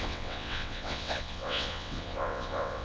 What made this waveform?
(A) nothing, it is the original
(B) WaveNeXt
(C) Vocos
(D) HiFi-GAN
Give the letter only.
B